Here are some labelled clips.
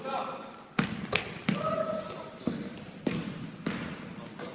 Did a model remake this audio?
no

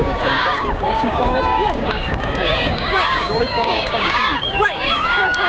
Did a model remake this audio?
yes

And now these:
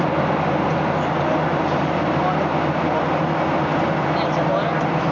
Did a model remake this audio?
no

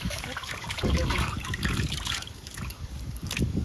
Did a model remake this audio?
yes